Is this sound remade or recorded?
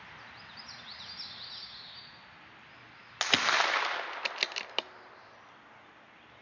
recorded